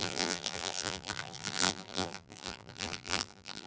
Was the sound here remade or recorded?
remade